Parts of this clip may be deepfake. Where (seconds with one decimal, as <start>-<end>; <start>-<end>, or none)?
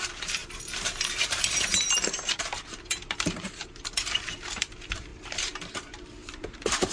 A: 0.0-6.9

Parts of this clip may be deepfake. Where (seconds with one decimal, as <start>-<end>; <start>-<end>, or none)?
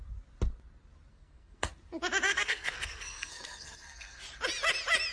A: 1.1-1.7; 2.3-4.2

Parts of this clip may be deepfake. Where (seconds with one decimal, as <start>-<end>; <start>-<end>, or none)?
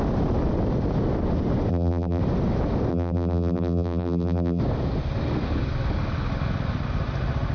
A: 1.7-2.2; 2.9-4.6